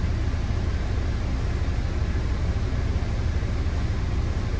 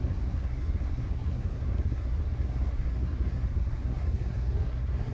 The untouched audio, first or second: first